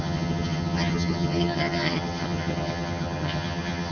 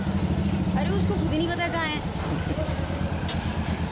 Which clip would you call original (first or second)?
second